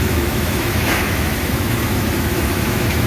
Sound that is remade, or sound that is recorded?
remade